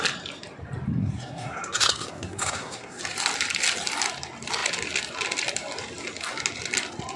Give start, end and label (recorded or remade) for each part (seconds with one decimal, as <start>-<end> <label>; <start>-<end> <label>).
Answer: 0.0-1.0 recorded; 1.0-3.0 remade; 3.0-7.2 recorded